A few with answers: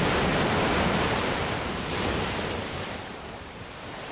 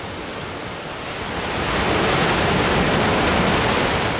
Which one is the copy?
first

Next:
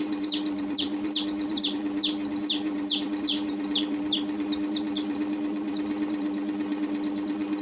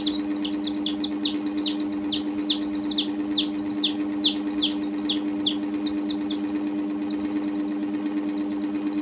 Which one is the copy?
first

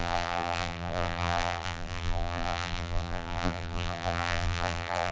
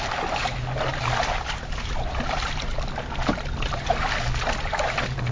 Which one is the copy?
first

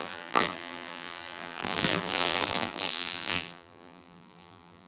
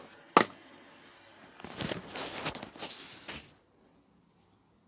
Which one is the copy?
first